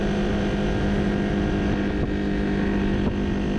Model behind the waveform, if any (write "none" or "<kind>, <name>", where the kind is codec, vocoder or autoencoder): none